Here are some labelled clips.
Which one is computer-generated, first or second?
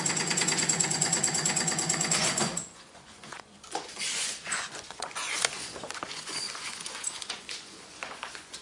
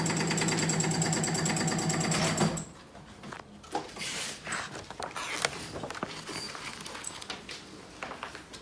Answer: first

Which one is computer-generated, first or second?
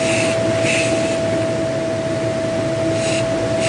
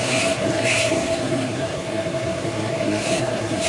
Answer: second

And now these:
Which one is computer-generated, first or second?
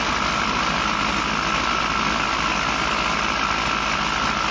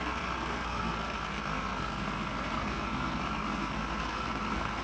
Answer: second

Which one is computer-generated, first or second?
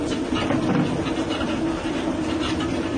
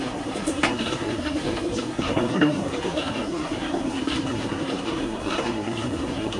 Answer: second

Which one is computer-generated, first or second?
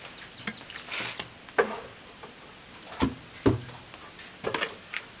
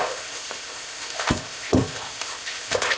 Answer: second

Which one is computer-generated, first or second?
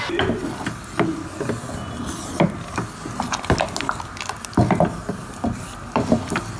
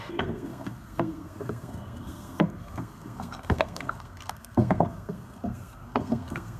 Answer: second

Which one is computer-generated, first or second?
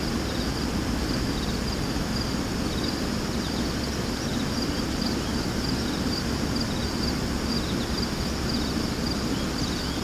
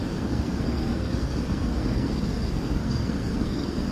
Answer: second